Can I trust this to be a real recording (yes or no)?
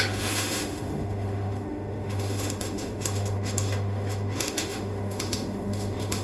no